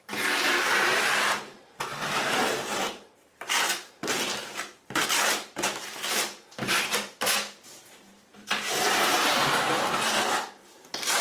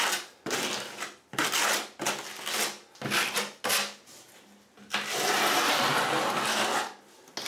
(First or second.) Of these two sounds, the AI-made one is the first